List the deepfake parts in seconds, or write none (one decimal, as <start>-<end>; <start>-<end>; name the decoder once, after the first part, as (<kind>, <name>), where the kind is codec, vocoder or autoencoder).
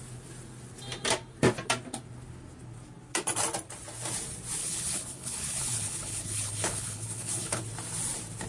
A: 4.6-7.6 (codec, HILCodec)